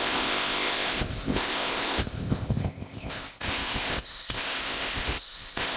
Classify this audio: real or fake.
fake